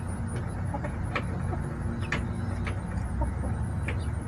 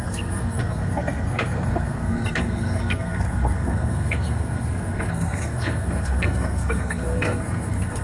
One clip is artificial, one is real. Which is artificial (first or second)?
second